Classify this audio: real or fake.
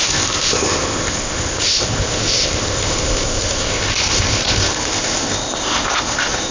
fake